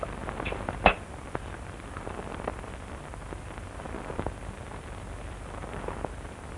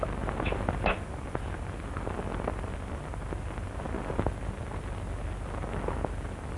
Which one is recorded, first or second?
second